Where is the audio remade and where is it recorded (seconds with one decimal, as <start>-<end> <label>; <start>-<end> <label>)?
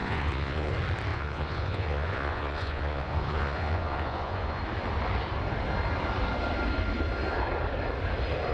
0.0-0.7 remade; 0.7-1.1 recorded; 1.1-4.6 remade; 4.6-8.5 recorded